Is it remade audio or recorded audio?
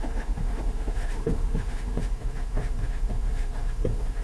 remade